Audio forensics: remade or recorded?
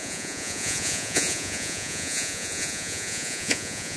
remade